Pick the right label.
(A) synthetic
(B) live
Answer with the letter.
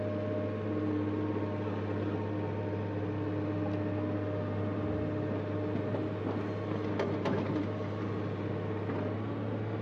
B